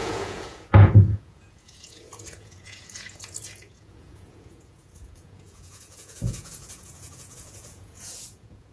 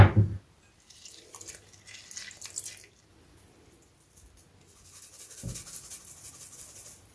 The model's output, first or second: first